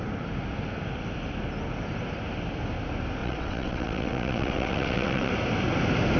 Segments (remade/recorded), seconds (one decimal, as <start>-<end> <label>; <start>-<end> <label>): 0.0-3.2 recorded; 3.2-5.3 remade; 5.3-6.2 recorded